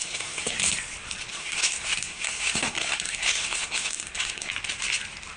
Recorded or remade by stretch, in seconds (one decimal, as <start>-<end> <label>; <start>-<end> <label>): 0.0-0.6 remade; 0.6-1.3 recorded; 1.3-4.5 remade; 4.5-5.4 recorded